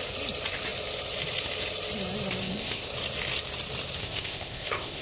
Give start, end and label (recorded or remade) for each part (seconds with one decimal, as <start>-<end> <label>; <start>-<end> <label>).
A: 0.0-2.4 recorded; 2.4-2.9 remade; 2.9-4.0 recorded; 4.0-5.0 remade